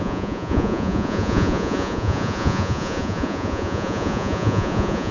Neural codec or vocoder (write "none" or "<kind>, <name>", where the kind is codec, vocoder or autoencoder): vocoder, Vocos